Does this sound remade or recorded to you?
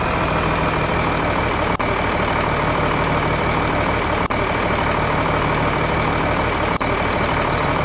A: remade